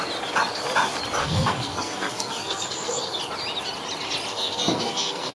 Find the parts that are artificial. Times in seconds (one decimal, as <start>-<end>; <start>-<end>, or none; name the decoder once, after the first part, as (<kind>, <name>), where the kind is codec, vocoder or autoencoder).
1.2-3.2 (codec, SNAC); 4.3-5.3